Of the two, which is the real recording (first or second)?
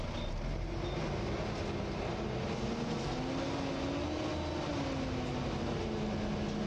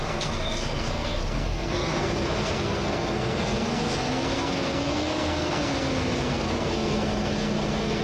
first